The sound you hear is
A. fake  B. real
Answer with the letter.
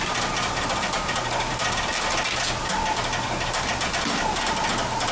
B